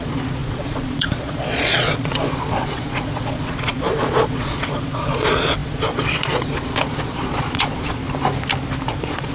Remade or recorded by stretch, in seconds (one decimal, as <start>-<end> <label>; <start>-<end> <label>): 0.0-8.0 remade; 8.0-8.9 recorded; 8.9-9.3 remade

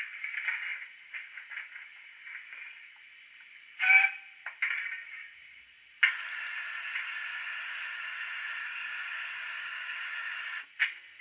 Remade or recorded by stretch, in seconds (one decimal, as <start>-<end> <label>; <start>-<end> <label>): 0.0-7.3 recorded; 7.3-8.0 remade; 8.0-8.6 recorded; 8.6-10.4 remade; 10.4-11.2 recorded